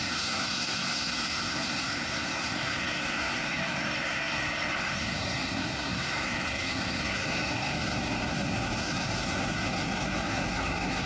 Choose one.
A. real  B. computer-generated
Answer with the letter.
B